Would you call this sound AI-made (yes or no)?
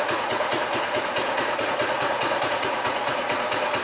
yes